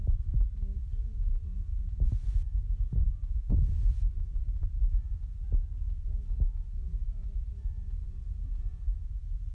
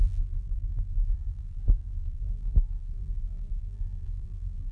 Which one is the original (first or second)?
first